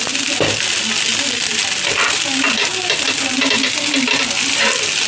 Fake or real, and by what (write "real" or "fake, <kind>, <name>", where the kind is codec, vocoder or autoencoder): real